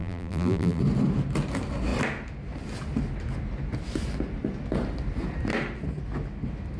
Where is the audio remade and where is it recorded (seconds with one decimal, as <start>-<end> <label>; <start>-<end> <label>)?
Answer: 0.0-0.8 remade; 0.8-6.8 recorded